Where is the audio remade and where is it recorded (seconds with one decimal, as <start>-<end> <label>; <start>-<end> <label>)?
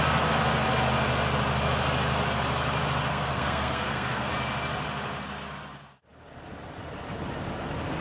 0.0-3.1 recorded; 3.1-4.3 remade; 4.3-8.0 recorded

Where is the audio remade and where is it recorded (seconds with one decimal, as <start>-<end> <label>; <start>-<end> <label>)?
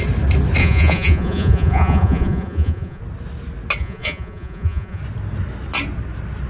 0.0-0.6 recorded; 0.6-3.0 remade; 3.0-3.8 recorded; 3.8-5.0 remade; 5.0-6.5 recorded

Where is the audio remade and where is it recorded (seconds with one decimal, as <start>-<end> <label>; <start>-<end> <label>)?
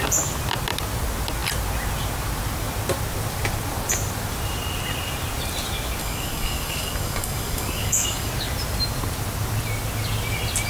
0.0-6.0 recorded; 6.0-8.3 remade; 8.3-10.7 recorded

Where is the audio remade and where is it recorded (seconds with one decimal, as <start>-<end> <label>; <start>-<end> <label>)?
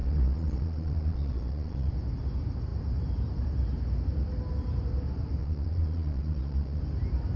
0.0-1.9 remade; 1.9-5.4 recorded; 5.4-6.8 remade; 6.8-7.4 recorded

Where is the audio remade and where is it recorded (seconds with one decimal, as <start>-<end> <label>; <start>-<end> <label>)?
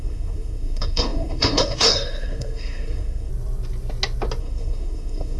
0.0-3.3 remade; 3.3-4.4 recorded; 4.4-5.4 remade